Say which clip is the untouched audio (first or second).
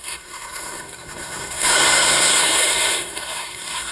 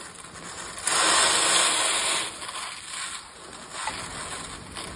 second